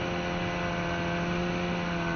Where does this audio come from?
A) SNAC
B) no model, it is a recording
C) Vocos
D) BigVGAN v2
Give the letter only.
B